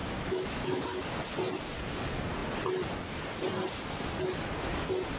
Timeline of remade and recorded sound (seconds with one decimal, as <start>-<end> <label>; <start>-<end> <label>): 0.0-0.8 remade; 0.8-5.2 recorded